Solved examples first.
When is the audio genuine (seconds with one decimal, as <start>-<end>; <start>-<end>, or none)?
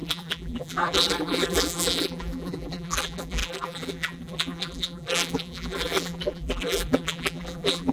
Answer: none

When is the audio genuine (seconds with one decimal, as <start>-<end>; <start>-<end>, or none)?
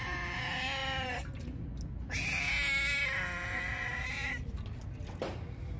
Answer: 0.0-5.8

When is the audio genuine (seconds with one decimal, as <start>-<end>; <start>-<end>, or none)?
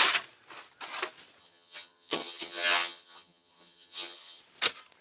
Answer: 0.0-1.4; 4.4-5.0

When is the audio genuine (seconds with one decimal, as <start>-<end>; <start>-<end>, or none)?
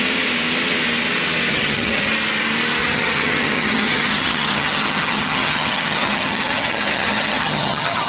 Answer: 0.0-1.5; 2.1-2.8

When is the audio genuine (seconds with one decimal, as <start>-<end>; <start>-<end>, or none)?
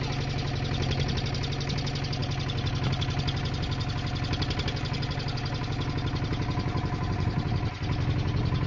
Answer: 0.0-8.7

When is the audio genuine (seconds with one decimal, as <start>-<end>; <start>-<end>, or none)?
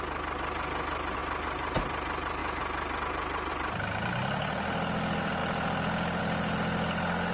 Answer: 0.0-7.3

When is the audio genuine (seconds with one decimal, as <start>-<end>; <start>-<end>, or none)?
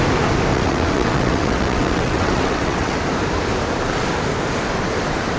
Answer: 0.0-0.5; 3.0-5.4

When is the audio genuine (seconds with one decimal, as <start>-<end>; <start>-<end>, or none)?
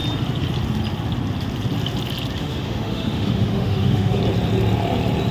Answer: 0.0-2.4; 4.2-5.3